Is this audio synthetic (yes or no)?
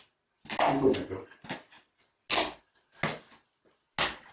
no